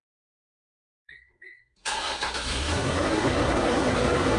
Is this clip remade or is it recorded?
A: remade